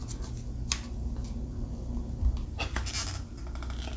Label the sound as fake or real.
real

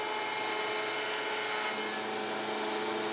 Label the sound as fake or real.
real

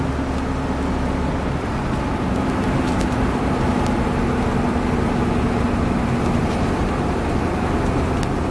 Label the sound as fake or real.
real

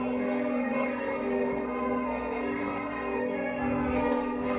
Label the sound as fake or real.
fake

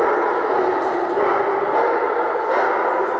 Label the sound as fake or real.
real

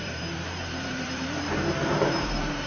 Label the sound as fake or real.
fake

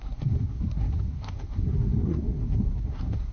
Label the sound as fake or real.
fake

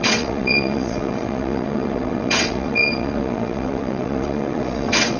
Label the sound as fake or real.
fake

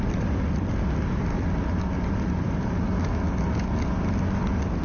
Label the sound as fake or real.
real